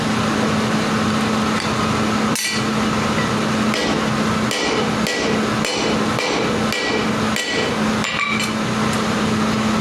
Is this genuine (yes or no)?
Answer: yes